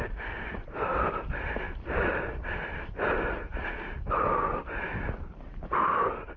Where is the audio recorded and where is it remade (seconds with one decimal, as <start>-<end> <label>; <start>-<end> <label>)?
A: 0.0-6.4 recorded